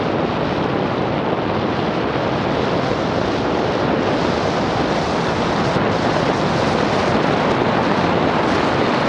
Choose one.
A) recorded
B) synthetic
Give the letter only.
A